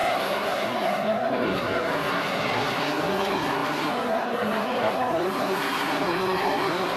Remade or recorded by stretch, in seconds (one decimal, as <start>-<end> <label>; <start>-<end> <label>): 0.0-7.0 remade